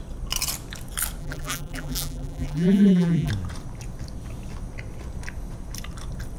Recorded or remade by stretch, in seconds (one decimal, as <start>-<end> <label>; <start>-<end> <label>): 0.0-1.2 recorded; 1.2-3.3 remade; 3.3-6.4 recorded